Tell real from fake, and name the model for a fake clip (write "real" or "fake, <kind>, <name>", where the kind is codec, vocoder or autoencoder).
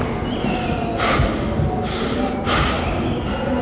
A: real